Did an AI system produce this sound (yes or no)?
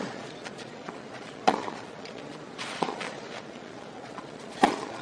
yes